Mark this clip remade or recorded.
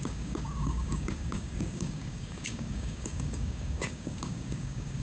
remade